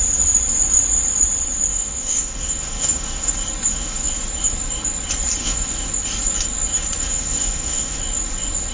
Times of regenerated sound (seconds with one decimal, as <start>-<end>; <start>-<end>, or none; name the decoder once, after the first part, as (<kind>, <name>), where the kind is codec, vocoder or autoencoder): 1.7-3.3 (autoencoder, DAC-VAE); 3.7-4.2; 5.4-5.9; 7.0-8.0